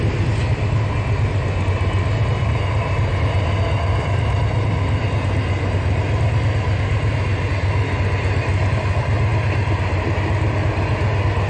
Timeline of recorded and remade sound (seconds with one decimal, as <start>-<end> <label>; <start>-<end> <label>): 0.0-11.5 recorded